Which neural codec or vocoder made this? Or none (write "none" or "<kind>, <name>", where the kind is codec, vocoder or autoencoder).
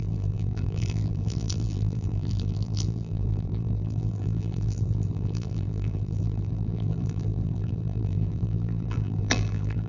vocoder, BigVGAN v2